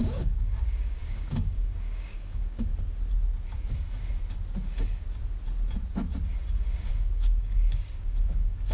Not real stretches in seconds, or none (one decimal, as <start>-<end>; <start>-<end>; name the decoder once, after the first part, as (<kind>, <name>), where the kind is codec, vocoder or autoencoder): 0.0-2.7 (codec, DAC); 6.5-8.7